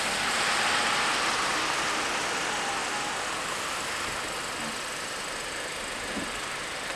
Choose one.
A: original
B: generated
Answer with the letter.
A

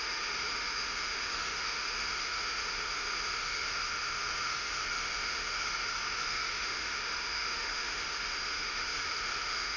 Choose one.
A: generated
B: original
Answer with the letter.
A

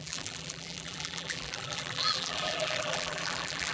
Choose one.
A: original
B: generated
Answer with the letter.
B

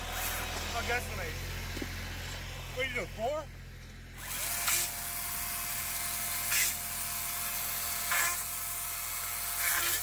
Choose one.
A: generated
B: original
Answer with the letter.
B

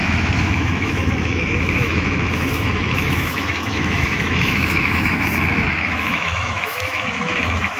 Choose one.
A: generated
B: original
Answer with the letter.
A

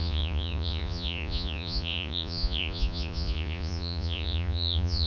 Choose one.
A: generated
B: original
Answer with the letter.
A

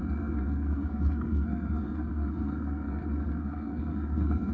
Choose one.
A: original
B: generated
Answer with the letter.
B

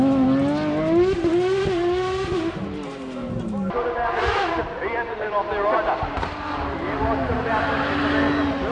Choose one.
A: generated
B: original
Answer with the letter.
B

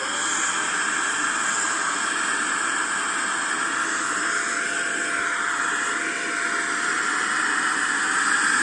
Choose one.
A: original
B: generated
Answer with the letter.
A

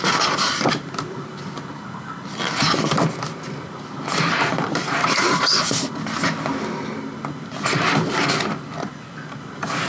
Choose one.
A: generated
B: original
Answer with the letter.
B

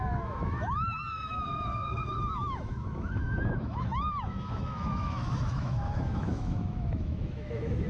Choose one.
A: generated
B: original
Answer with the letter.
A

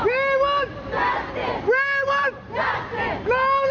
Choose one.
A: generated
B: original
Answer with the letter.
B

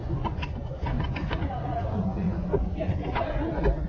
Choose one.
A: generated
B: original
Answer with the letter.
A